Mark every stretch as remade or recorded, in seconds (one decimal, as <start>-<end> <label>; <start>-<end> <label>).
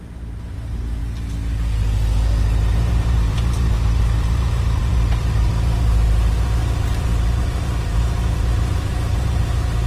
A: 0.0-1.0 remade; 1.0-2.9 recorded; 2.9-9.9 remade